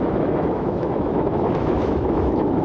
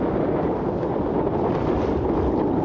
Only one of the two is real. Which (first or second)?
second